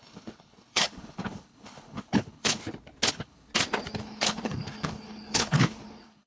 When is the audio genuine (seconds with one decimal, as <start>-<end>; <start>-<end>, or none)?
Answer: 2.6-3.1; 3.5-4.0